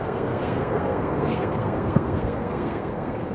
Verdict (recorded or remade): remade